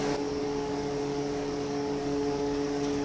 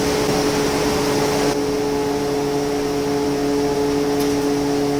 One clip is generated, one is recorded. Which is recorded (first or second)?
second